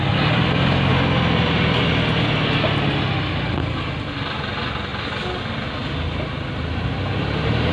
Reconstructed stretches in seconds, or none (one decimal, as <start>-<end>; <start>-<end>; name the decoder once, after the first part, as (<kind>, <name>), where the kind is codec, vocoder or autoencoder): none